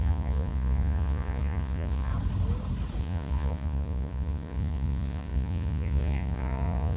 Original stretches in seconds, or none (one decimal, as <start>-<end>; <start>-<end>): 2.1-3.0